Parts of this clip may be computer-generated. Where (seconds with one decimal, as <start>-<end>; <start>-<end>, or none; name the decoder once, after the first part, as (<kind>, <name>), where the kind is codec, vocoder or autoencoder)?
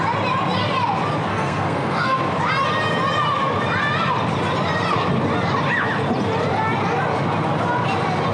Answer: 1.3-2.2 (codec, SNAC)